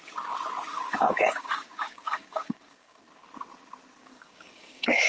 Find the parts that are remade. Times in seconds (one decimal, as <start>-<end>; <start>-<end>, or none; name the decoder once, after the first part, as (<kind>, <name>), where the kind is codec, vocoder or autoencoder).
0.7-3.0 (codec, DAC); 4.0-5.1